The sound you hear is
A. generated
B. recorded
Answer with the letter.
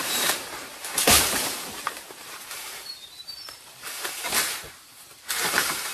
A